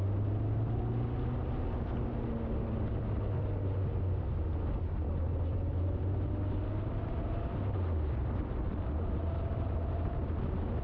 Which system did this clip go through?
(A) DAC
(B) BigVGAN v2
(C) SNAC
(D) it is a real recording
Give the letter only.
D